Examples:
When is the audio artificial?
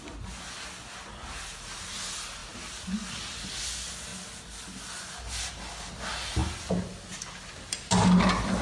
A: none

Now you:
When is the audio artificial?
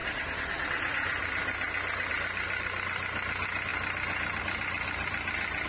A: none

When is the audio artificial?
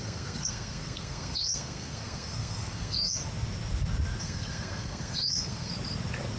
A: 0.0-3.2 (codec, SNAC); 4.2-5.7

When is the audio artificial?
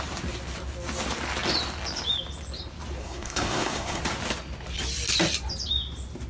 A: 3.0-4.0 (codec, SNAC)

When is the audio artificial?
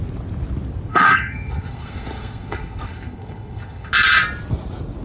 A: 0.9-3.9 (codec, SNAC)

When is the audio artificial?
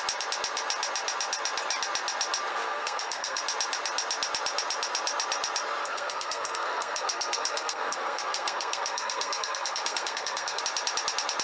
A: 2.5-3.4 (codec, SNAC); 5.8-10.6